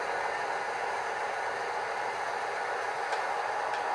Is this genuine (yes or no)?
yes